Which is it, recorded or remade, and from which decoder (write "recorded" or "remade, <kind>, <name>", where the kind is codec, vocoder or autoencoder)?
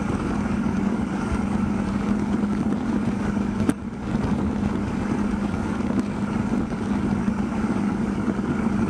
remade, codec, DAC